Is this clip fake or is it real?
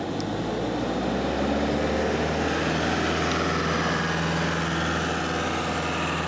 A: real